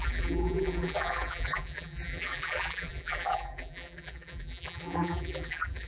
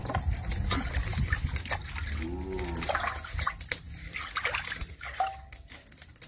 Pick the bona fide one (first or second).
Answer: second